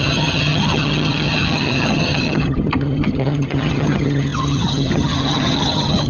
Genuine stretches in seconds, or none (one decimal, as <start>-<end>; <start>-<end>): none